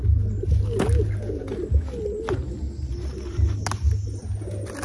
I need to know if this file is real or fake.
real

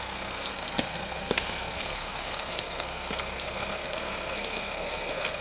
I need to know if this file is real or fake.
fake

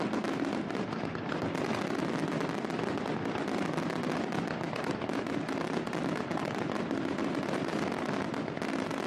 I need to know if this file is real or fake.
real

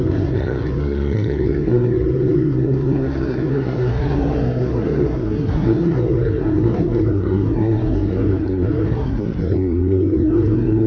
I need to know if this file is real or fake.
fake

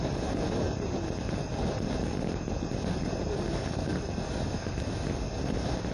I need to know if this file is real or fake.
real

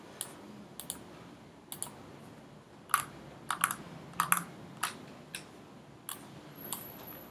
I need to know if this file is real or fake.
real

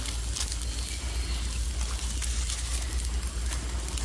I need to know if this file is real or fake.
real